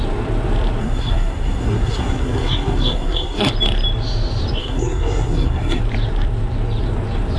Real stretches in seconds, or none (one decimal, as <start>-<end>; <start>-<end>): 0.0-0.8; 3.5-4.6; 5.8-7.4

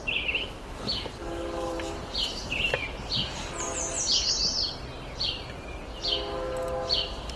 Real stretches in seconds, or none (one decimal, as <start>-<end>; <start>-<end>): 0.0-7.4

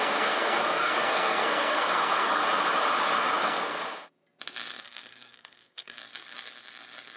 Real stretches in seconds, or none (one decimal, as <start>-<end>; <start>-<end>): 2.4-3.4; 3.8-4.8; 6.0-7.2

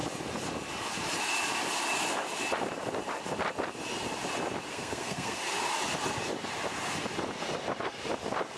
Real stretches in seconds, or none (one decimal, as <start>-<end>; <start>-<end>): 0.0-4.7; 5.4-8.6

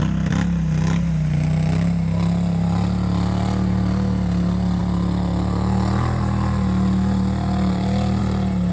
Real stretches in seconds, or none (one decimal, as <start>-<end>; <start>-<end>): 0.0-8.7

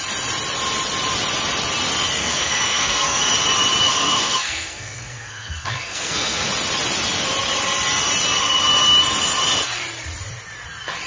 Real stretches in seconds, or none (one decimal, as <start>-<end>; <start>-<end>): 0.0-2.2; 3.2-3.9; 6.5-11.1

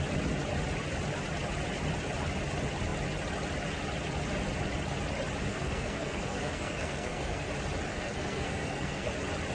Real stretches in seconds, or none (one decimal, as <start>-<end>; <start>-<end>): 0.0-5.5; 7.5-7.9; 9.1-9.5